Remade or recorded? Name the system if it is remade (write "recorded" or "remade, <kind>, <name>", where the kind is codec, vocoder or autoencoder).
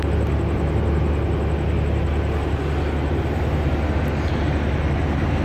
recorded